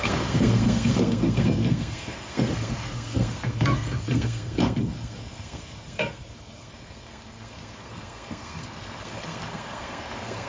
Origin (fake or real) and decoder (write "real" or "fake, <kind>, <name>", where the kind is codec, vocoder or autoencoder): fake, codec, SNAC